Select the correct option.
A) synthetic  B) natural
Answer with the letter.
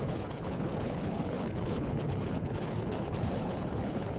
A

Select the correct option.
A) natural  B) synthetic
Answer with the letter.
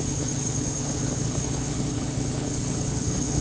B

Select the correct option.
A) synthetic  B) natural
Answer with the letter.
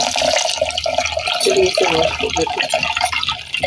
B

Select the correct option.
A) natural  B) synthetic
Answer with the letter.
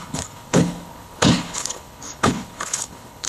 B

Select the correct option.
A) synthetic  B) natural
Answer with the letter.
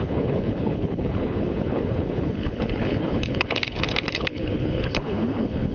A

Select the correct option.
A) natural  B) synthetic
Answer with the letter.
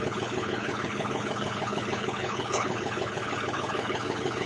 B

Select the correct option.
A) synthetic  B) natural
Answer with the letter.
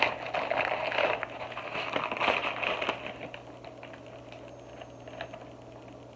B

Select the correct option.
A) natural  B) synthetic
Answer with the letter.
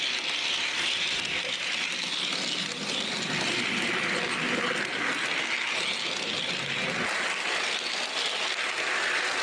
A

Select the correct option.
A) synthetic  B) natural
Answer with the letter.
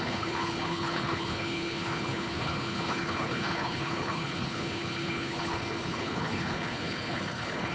A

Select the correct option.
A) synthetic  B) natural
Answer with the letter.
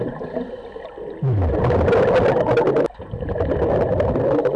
B